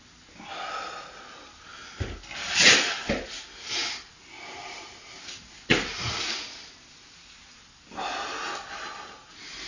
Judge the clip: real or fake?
real